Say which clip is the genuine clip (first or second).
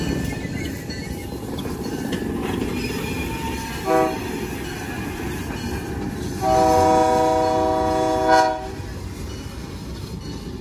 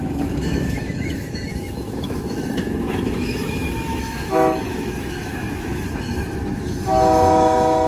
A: first